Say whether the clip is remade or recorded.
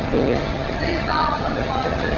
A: remade